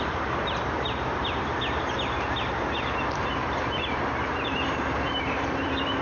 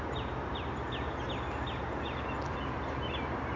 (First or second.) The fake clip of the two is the first